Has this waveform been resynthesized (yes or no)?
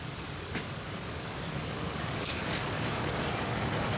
yes